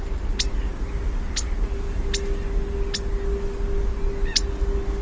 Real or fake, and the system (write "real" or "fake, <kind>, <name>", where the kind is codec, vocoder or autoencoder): real